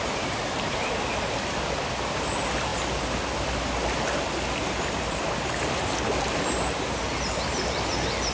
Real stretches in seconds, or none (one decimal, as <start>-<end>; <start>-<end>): 0.0-8.3